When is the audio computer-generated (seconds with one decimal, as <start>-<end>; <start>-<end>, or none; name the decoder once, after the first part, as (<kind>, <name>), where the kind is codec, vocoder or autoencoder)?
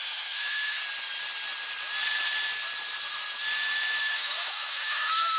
0.0-0.8 (autoencoder, DAC-VAE); 4.0-5.4